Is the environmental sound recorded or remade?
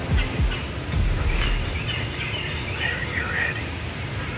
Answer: recorded